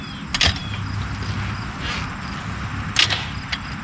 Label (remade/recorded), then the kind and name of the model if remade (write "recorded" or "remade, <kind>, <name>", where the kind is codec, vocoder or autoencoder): recorded